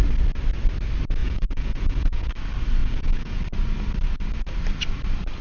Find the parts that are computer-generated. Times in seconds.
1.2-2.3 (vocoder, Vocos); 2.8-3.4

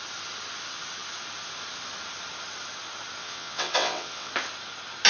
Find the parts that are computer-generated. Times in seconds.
3.2-4.3 (vocoder, WaveNeXt)

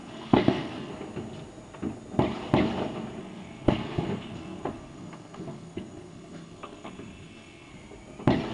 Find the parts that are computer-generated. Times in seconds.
0.0-0.9 (codec, SNAC); 3.2-7.7

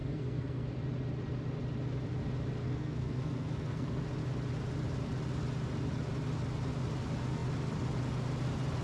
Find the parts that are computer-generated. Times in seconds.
0.0-0.7 (codec, SNAC); 2.6-4.0

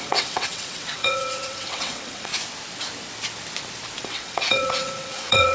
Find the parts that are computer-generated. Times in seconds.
0.0-2.3 (vocoder, WaveNeXt); 4.0-5.5

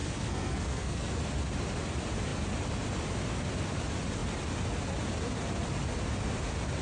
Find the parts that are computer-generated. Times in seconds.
0.0-1.2 (codec, SNAC)

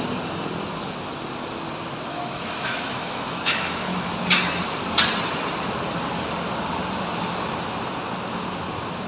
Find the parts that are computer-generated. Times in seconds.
2.1-4.1 (autoencoder, DAC-VAE)